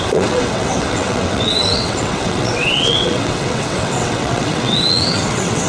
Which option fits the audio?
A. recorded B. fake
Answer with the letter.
B